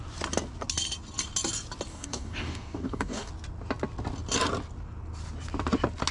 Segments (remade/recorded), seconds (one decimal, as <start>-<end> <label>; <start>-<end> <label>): 0.0-1.9 recorded; 1.9-3.3 remade; 3.3-6.1 recorded